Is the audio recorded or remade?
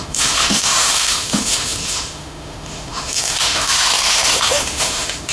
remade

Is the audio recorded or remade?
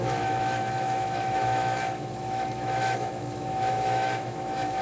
remade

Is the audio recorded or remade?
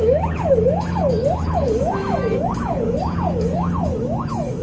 remade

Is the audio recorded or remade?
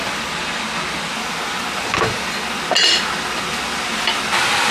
recorded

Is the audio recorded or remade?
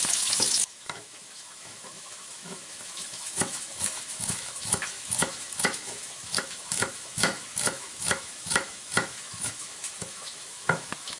remade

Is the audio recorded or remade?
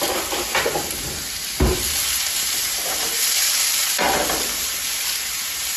recorded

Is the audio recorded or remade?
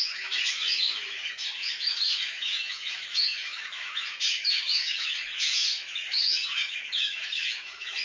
remade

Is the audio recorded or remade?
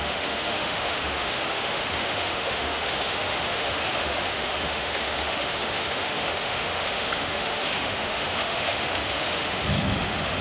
remade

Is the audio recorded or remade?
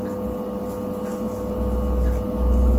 recorded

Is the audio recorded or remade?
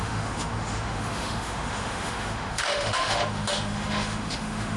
remade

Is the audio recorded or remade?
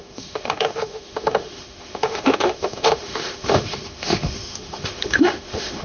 remade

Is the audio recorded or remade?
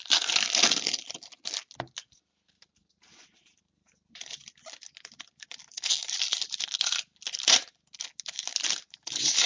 recorded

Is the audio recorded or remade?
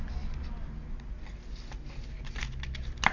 recorded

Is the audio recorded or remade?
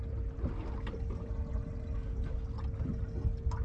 recorded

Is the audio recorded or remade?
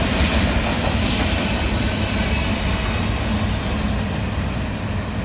recorded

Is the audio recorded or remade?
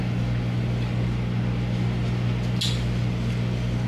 recorded